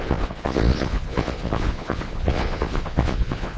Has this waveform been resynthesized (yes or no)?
yes